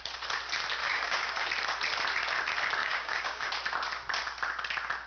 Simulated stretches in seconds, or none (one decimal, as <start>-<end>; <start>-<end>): 0.8-1.4; 2.8-3.5